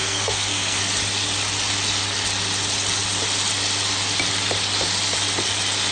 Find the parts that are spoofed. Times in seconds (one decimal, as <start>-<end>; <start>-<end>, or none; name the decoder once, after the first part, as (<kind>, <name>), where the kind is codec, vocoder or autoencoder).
0.0-0.8 (codec, SNAC)